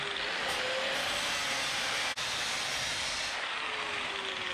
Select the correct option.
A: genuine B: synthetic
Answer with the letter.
A